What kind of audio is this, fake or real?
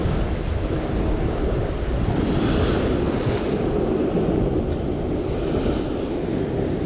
real